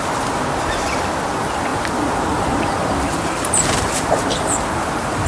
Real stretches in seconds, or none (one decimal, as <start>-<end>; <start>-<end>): 0.0-1.7